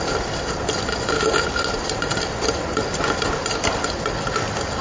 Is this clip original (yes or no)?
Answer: yes